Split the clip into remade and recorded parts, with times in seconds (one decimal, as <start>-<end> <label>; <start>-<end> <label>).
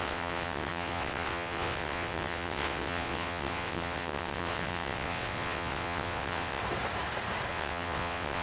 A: 0.0-6.6 remade; 6.6-7.5 recorded; 7.5-8.4 remade